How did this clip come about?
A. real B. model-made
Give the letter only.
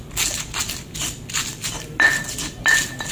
A